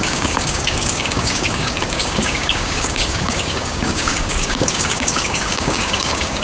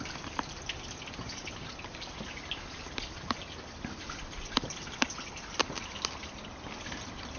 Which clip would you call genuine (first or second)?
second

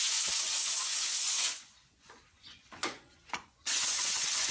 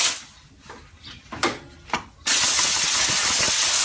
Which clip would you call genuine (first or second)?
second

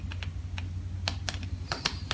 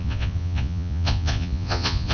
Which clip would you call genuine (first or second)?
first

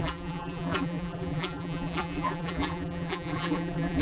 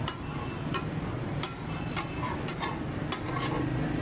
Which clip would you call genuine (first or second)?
second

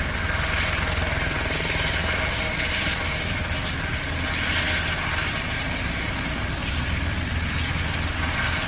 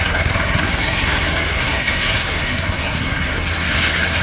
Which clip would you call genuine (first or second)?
first